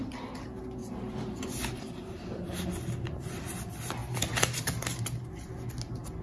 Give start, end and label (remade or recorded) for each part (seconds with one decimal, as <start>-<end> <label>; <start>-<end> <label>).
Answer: 0.0-6.2 recorded

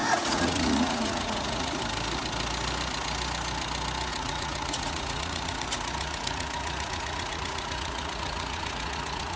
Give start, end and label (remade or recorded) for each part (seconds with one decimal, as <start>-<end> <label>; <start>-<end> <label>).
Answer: 0.0-1.8 remade; 1.8-4.1 recorded; 4.1-9.4 remade